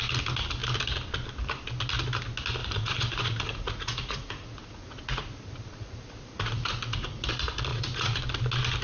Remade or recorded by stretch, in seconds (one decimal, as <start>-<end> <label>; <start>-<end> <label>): 0.0-2.6 recorded; 2.6-7.3 remade; 7.3-7.7 recorded; 7.7-8.2 remade; 8.2-8.8 recorded